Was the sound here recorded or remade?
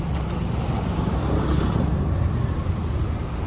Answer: recorded